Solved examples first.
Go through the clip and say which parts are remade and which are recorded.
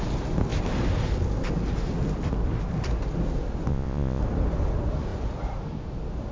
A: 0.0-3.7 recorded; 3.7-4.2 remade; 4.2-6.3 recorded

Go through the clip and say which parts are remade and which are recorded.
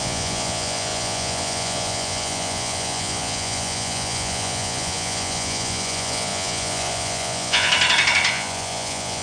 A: 0.0-7.7 remade; 7.7-8.3 recorded; 8.3-9.2 remade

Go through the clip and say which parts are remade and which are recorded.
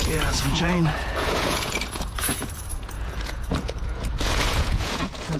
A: 0.0-5.4 remade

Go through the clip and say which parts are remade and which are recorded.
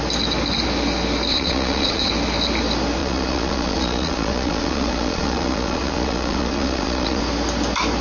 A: 0.0-1.3 recorded; 1.3-2.1 remade; 2.1-3.0 recorded; 3.0-7.2 remade; 7.2-8.0 recorded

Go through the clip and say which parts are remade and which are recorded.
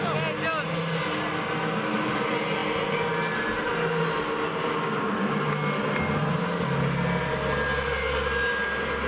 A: 0.0-9.1 recorded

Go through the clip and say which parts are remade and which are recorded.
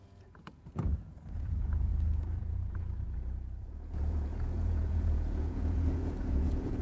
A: 0.0-1.9 remade; 1.9-2.4 recorded; 2.4-6.8 remade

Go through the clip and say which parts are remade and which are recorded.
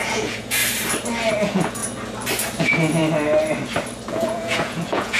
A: 0.0-0.6 remade; 0.6-1.3 recorded; 1.3-1.8 remade; 1.8-2.6 recorded; 2.6-3.0 remade; 3.0-4.1 recorded; 4.1-5.2 remade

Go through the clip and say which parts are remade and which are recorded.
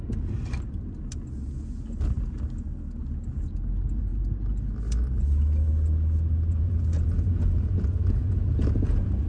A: 0.0-6.5 recorded; 6.5-9.3 remade